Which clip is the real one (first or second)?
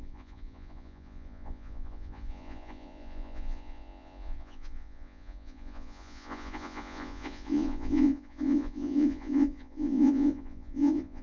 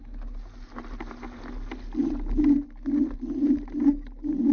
second